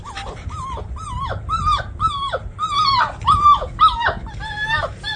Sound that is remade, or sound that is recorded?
recorded